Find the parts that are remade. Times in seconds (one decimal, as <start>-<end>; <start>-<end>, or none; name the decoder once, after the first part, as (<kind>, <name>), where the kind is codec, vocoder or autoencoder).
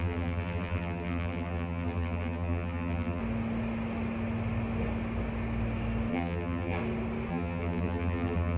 0.0-3.2 (vocoder, BigVGAN v2); 6.1-6.8; 7.3-8.6